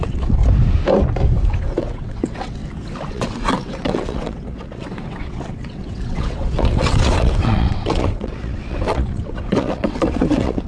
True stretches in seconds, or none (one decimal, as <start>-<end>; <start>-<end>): 0.4-1.6; 2.6-3.1